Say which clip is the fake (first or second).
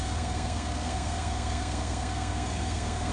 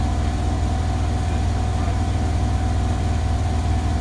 first